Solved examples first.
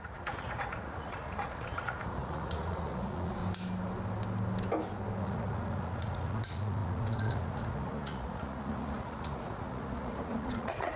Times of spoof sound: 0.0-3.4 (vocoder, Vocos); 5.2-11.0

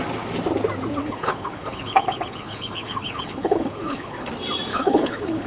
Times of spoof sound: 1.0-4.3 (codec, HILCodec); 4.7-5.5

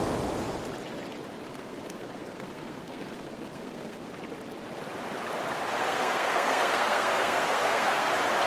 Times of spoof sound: 1.5-4.1 (codec, SNAC); 5.8-8.1